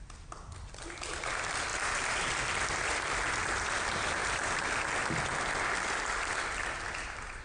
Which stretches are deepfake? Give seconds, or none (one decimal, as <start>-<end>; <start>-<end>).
1.7-2.3; 4.2-4.9